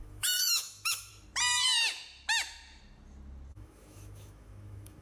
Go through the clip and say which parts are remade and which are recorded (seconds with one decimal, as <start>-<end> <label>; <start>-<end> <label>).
0.0-1.1 remade; 1.1-3.5 recorded; 3.5-5.0 remade